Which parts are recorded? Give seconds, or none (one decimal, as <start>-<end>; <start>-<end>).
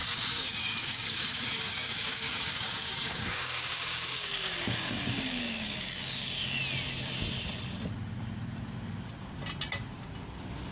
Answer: 6.6-10.7